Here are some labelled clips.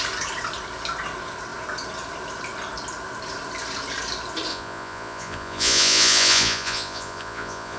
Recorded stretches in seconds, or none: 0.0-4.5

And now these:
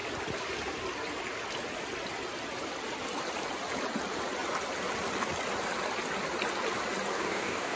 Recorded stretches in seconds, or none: 0.0-7.1

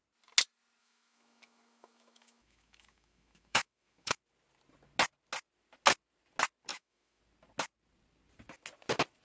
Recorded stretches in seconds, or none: 0.0-0.8; 4.2-6.7; 7.2-9.2